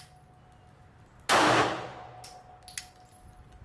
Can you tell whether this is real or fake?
real